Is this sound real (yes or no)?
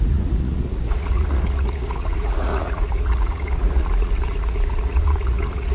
no